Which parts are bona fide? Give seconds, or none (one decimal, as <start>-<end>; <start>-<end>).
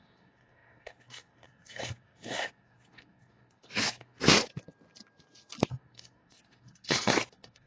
4.5-5.7